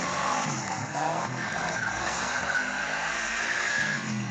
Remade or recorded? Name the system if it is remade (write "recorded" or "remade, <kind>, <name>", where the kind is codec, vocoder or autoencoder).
remade, codec, SNAC